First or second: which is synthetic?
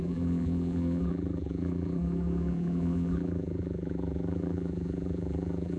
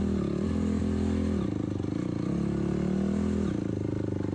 first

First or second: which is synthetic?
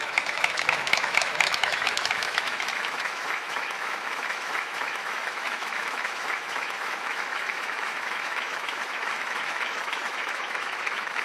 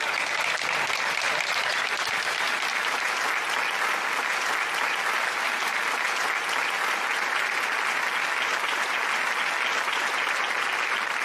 first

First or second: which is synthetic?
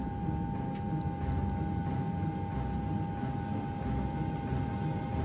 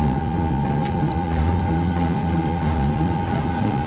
second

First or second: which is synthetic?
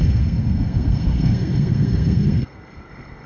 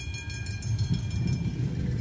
first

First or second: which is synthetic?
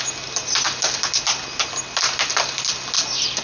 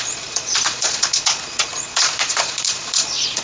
second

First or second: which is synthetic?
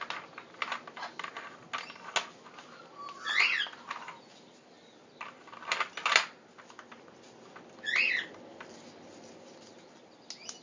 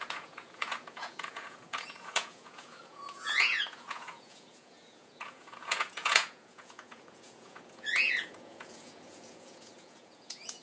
second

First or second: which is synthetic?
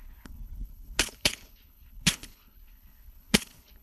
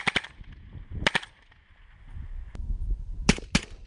first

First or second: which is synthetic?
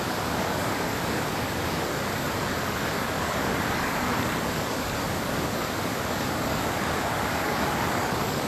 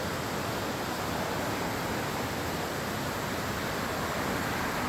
first